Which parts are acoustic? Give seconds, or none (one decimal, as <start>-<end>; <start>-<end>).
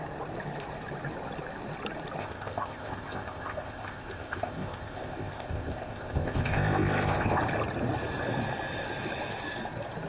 0.0-2.2; 7.4-10.1